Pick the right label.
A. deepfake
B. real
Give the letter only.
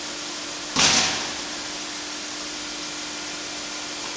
B